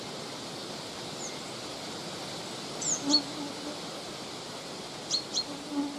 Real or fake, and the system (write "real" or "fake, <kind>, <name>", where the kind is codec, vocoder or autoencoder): real